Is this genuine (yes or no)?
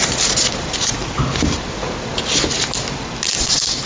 yes